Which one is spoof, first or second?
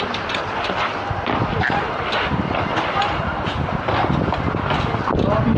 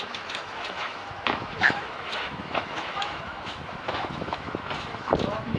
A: second